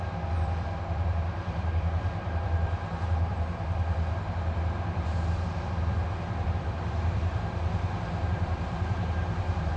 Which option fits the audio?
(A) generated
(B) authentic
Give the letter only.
A